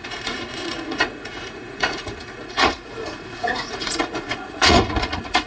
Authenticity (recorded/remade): remade